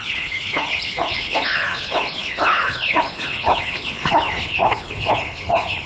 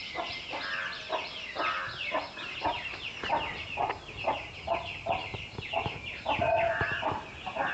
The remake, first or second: first